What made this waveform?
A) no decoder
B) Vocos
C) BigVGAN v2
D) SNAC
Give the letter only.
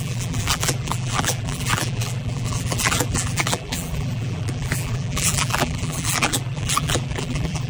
C